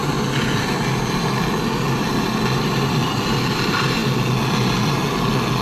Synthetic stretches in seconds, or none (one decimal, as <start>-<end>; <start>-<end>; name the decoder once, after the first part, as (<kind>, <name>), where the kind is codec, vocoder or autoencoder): none